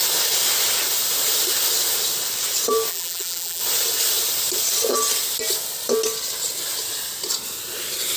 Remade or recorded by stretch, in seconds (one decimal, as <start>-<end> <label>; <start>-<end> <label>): 0.0-2.9 recorded; 2.9-3.6 remade; 3.6-8.2 recorded

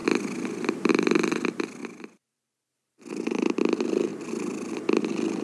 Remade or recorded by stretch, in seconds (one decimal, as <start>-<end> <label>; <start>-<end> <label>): 0.0-1.8 recorded; 1.8-3.3 remade; 3.3-4.1 recorded; 4.1-4.7 remade; 4.7-5.4 recorded

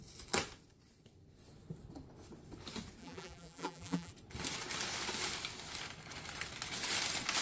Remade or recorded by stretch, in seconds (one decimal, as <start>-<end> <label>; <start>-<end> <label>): 0.0-3.0 recorded; 3.0-4.1 remade; 4.1-7.4 recorded

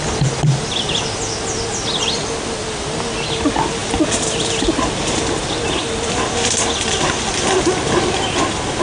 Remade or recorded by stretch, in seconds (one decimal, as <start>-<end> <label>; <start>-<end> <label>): 0.0-5.8 recorded; 5.8-6.3 remade; 6.3-8.8 recorded